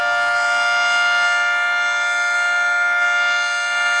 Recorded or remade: recorded